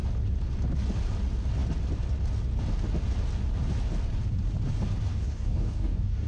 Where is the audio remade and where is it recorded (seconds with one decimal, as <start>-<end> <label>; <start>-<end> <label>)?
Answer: 0.0-5.1 recorded; 5.1-6.3 remade